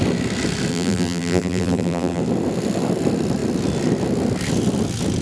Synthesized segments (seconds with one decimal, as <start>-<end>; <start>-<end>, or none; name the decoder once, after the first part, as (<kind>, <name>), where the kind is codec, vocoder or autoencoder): 0.7-2.2 (vocoder, BigVGAN v2)